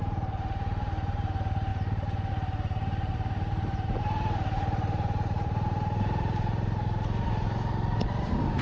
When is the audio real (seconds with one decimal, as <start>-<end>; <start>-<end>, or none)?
none